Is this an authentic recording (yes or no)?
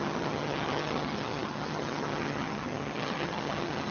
no